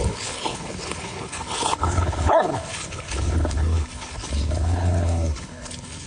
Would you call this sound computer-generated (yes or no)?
yes